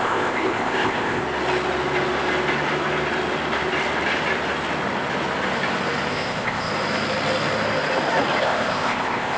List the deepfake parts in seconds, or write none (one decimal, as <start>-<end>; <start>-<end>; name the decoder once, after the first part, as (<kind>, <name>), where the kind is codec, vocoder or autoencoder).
0.0-1.2 (codec, ZipCodec); 6.1-6.7; 8.4-9.4